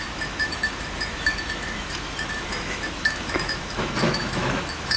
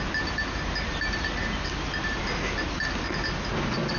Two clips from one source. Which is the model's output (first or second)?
first